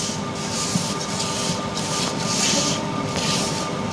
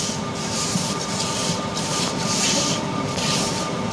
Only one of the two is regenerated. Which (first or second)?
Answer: second